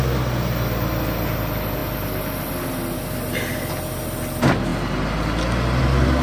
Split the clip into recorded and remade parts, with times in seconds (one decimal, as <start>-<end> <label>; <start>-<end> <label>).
0.0-6.2 recorded